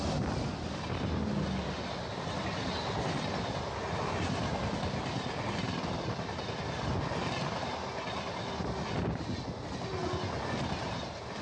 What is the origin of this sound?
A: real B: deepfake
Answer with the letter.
A